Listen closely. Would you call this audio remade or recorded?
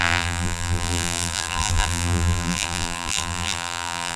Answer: remade